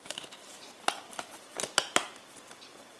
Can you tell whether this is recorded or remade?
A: remade